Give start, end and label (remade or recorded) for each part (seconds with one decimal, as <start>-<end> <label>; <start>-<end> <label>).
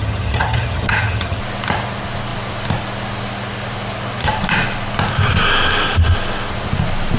0.0-1.4 remade; 1.4-7.2 recorded